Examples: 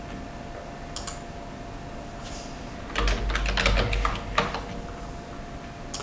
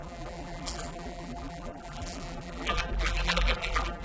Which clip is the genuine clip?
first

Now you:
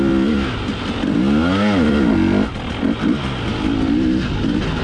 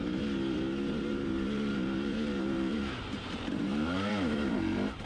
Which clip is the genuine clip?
first